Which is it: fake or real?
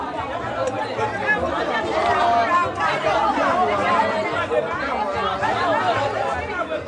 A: real